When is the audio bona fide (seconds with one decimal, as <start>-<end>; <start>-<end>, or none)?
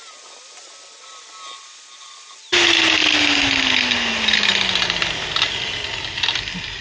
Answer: 0.0-6.8